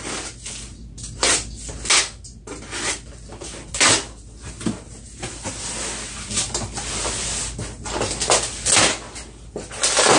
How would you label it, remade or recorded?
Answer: recorded